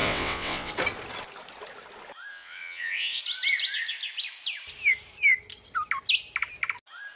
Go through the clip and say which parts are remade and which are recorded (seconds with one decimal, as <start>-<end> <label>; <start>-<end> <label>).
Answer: 0.0-0.7 remade; 0.7-2.3 recorded; 2.3-3.2 remade; 3.2-7.2 recorded